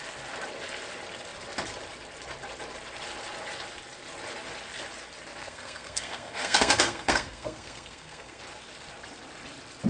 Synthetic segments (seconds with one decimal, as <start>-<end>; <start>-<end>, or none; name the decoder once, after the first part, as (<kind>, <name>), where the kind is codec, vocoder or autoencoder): 5.4-8.4 (codec, SNAC)